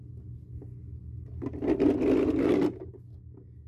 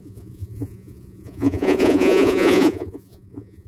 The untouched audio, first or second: first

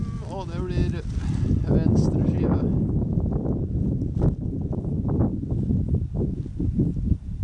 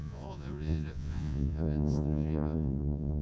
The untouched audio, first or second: first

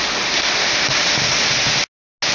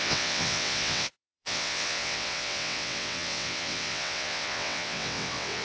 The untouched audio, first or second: first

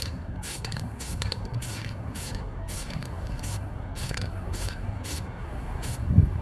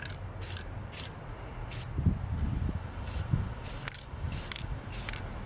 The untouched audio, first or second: second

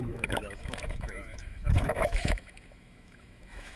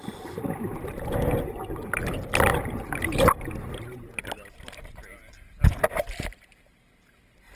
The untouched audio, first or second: second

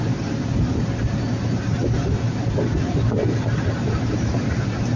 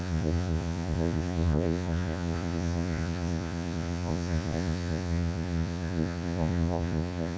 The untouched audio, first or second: first